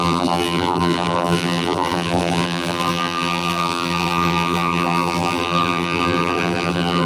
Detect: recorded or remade remade